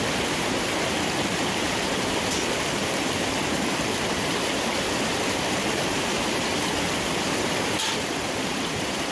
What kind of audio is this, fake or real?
fake